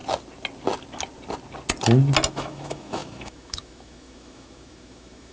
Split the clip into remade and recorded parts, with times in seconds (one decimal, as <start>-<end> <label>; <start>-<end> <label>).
0.0-2.3 recorded; 2.3-5.3 remade